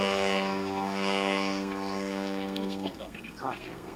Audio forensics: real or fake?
fake